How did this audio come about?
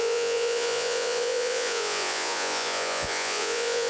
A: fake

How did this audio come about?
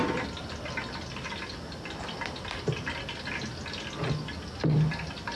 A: real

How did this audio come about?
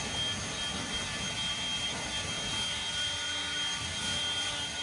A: real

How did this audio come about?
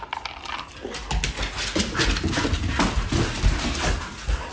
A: real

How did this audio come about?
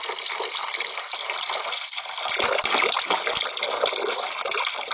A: real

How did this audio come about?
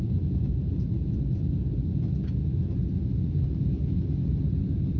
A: real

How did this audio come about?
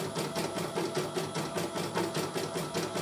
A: real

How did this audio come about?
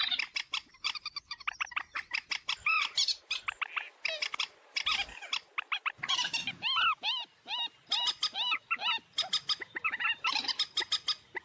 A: real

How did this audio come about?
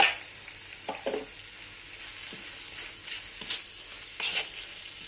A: real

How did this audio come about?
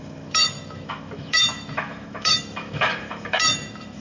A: fake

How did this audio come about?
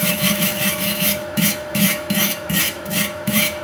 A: fake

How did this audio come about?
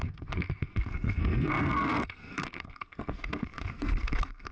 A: fake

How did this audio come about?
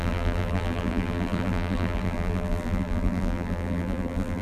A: fake